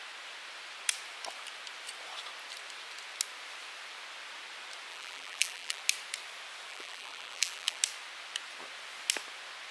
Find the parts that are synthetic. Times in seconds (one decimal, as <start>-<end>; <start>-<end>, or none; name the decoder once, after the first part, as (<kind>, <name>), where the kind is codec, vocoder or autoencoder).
4.9-5.8 (vocoder, BigVGAN v2); 6.7-7.8